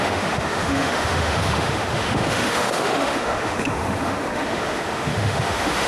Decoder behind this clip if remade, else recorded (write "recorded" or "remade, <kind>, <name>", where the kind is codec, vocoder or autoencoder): remade, autoencoder, DAC-VAE